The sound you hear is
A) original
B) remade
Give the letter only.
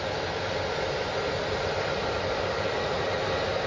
A